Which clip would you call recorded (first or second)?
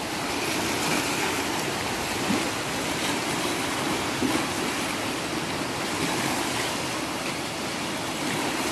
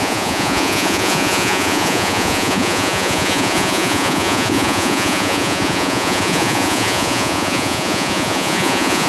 first